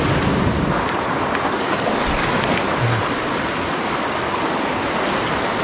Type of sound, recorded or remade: recorded